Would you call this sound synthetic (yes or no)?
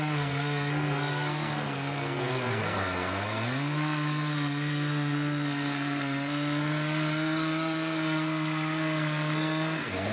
yes